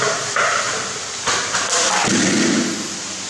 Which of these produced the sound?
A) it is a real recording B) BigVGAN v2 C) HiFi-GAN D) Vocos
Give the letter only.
A